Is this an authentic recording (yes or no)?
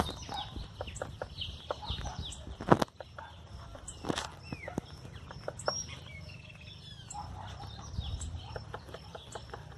yes